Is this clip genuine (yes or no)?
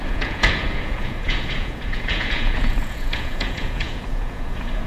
no